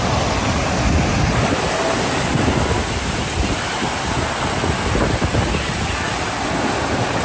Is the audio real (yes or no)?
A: yes